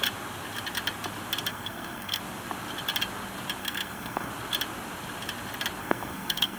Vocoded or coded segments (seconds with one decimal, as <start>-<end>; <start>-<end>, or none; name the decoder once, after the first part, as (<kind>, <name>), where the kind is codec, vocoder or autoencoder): 1.5-2.2 (codec, SNAC); 3.6-4.3; 5.8-6.6